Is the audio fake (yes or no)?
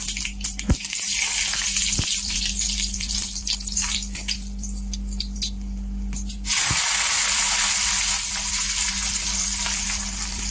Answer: no